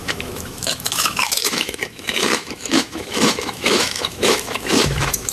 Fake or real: fake